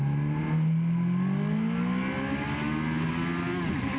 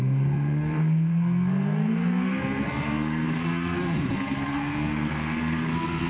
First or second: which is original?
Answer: first